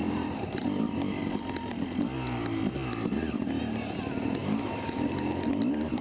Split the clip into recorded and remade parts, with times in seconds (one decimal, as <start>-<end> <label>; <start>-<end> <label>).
0.0-4.4 recorded; 4.4-5.2 remade; 5.2-6.0 recorded